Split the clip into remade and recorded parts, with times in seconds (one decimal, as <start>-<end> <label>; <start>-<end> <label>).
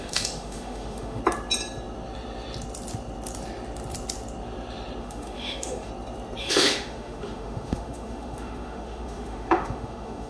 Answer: 0.0-1.2 remade; 1.2-5.0 recorded; 5.0-5.9 remade; 5.9-6.4 recorded; 6.4-10.3 remade